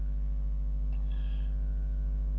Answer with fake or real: real